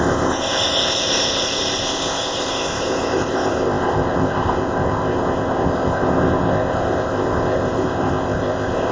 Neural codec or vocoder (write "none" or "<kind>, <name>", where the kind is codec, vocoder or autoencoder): codec, ZipCodec